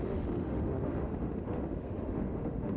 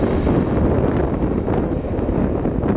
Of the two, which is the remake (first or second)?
first